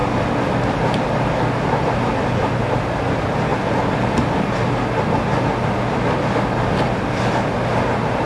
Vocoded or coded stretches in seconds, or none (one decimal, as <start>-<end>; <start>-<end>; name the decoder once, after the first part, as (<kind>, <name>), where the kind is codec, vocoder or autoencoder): none